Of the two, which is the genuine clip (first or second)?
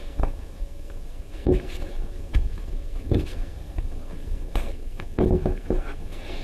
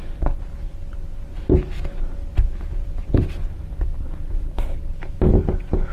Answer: second